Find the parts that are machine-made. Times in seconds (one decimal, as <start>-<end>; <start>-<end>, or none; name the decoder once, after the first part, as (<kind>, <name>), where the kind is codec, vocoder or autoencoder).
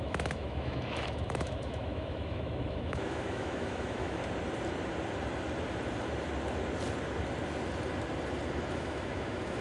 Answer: 0.0-4.2 (autoencoder, DAC-VAE); 8.7-9.6